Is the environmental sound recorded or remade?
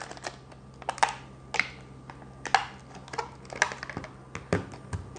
recorded